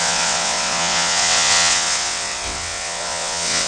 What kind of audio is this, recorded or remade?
remade